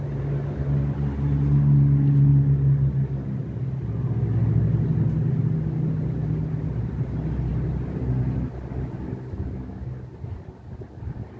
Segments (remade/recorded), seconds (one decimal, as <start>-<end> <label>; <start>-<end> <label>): 0.0-11.4 recorded